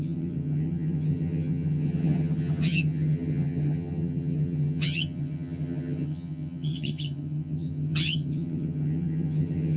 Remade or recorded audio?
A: remade